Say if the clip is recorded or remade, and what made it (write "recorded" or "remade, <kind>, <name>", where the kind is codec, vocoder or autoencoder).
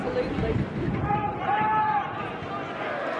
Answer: recorded